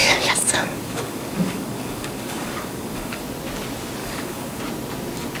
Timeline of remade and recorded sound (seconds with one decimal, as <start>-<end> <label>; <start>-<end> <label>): 0.0-3.2 remade; 3.2-4.0 recorded; 4.0-4.6 remade; 4.6-5.4 recorded

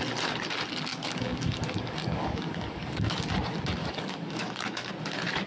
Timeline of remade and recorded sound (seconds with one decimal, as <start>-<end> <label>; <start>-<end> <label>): 0.0-0.9 recorded; 0.9-3.3 remade; 3.3-3.8 recorded; 3.8-4.9 remade; 4.9-5.5 recorded

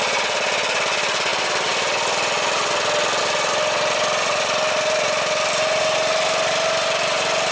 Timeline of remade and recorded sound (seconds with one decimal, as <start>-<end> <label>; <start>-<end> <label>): 0.0-7.5 recorded